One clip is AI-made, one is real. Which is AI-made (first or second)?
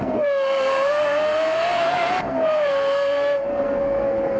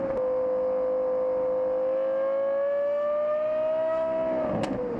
first